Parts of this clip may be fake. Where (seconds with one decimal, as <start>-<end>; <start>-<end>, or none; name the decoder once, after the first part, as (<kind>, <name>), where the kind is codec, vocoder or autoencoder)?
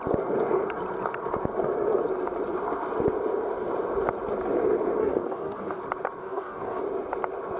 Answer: 5.0-5.8 (codec, DAC); 6.2-6.8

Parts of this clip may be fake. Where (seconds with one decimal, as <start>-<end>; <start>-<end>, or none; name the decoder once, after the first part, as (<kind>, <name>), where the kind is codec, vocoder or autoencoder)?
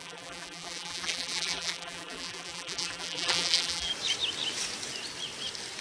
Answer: 0.0-3.9 (vocoder, BigVGAN v2)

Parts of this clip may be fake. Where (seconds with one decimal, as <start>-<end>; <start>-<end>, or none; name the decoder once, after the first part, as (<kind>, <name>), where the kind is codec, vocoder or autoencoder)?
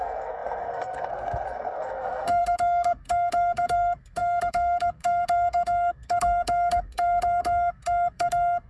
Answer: 0.0-8.7 (codec, SNAC)